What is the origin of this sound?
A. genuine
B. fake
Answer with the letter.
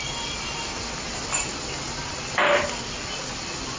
A